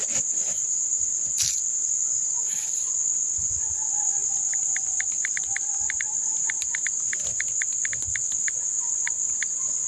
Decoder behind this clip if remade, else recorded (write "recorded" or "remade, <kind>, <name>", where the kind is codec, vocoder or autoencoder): recorded